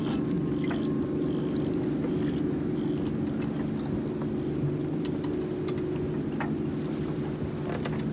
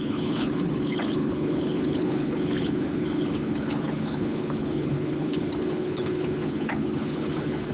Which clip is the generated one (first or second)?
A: second